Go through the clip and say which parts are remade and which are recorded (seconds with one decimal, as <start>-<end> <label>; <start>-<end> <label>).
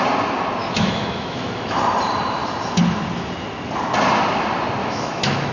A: 0.0-0.6 recorded; 0.6-1.8 remade; 1.8-4.8 recorded; 4.8-5.5 remade